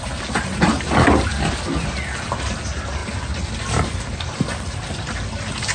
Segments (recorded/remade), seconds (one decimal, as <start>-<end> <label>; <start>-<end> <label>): 0.0-5.7 recorded